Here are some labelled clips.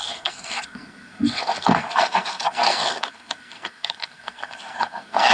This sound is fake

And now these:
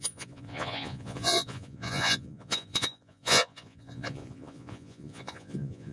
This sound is fake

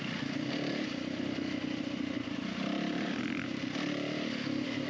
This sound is real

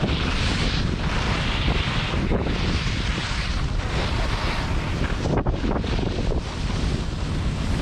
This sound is fake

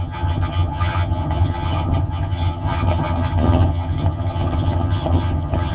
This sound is fake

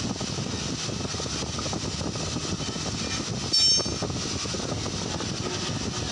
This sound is real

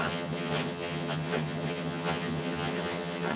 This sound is fake